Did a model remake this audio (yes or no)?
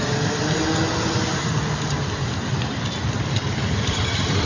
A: no